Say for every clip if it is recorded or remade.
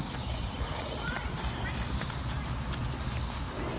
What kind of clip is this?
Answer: recorded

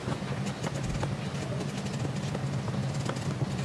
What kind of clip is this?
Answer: recorded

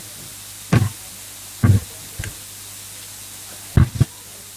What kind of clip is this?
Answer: recorded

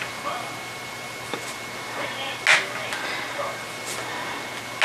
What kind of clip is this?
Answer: recorded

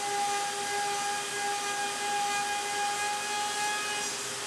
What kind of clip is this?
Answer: recorded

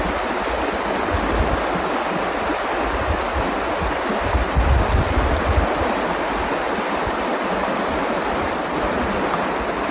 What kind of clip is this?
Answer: recorded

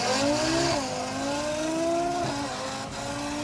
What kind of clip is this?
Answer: recorded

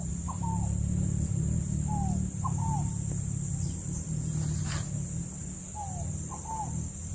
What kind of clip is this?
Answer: recorded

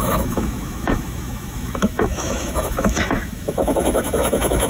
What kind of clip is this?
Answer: remade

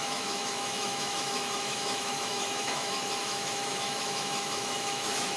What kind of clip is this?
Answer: remade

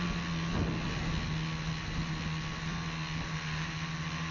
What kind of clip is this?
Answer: recorded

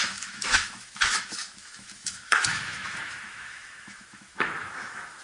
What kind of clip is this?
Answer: remade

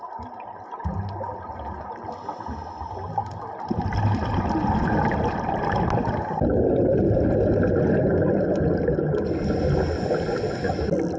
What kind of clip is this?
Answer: recorded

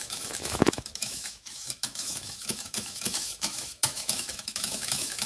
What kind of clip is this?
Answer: remade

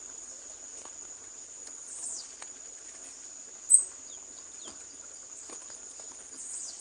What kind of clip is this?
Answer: recorded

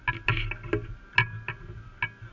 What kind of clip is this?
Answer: recorded